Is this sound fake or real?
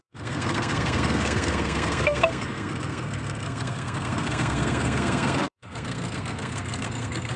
fake